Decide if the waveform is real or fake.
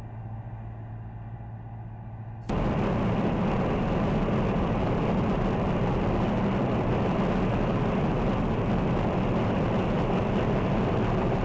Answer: real